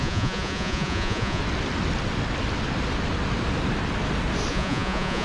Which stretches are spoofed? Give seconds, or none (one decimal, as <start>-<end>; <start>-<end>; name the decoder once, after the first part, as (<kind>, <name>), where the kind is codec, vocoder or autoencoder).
0.0-1.4 (vocoder, Vocos); 4.5-5.2